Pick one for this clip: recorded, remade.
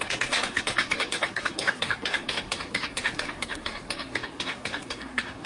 remade